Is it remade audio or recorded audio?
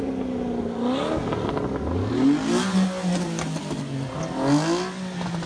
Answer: recorded